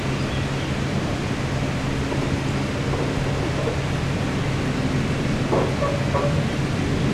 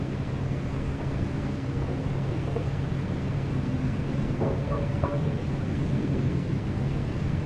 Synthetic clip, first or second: second